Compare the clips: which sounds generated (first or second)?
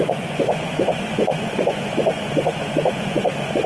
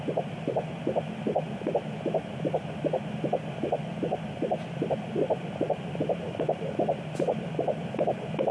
first